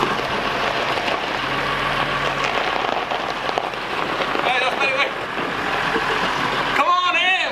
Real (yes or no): yes